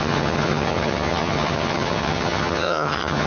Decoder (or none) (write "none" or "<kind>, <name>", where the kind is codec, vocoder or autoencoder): vocoder, HiFi-GAN